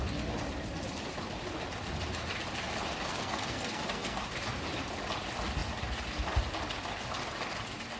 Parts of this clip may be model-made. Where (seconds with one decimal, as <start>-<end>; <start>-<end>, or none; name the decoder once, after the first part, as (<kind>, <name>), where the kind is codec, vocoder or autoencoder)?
3.1-4.2 (codec, SNAC)